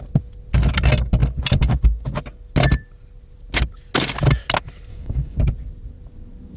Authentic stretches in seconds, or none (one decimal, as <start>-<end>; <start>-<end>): 0.0-4.9; 5.4-6.6